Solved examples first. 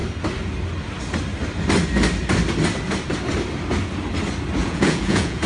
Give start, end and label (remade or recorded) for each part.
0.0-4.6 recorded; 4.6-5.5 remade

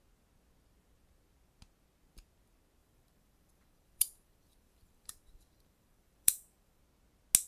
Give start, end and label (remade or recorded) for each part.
0.0-2.8 recorded; 2.8-6.8 remade; 6.8-7.5 recorded

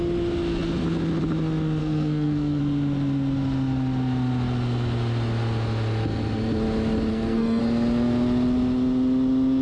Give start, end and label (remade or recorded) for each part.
0.0-1.8 recorded; 1.8-2.6 remade; 2.6-7.1 recorded; 7.1-7.6 remade; 7.6-9.6 recorded

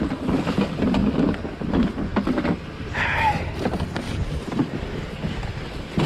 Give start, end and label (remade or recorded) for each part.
0.0-6.1 recorded

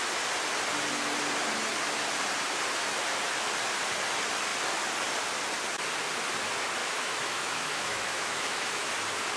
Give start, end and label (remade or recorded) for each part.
0.0-6.8 recorded; 6.8-8.9 remade; 8.9-9.4 recorded

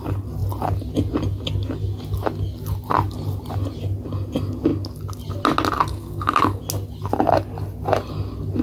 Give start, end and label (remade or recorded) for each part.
0.0-5.9 recorded; 5.9-6.6 remade; 6.6-8.6 recorded

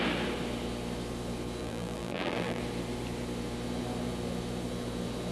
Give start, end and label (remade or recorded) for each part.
0.0-1.6 recorded; 1.6-2.6 remade; 2.6-5.3 recorded

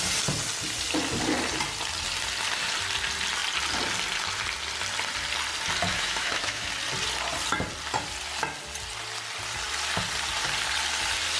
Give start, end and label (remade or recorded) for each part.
0.0-5.9 recorded; 5.9-6.7 remade; 6.7-11.4 recorded